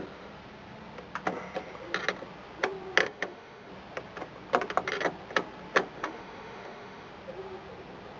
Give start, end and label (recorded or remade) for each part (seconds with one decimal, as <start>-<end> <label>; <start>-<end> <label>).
0.0-3.0 recorded; 3.0-3.7 remade; 3.7-6.0 recorded; 6.0-7.1 remade; 7.1-8.2 recorded